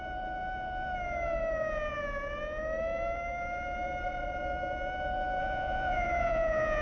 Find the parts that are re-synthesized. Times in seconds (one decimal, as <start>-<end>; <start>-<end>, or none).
5.4-6.8